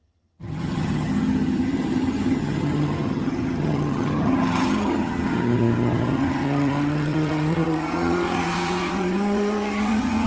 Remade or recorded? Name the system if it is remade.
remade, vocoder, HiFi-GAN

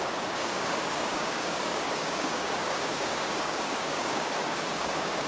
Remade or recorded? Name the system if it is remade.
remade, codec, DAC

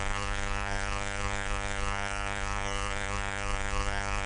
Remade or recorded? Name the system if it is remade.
remade, codec, SNAC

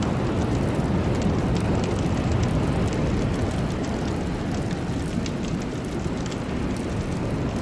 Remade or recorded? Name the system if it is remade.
recorded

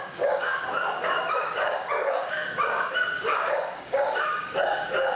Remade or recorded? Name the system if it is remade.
remade, codec, DAC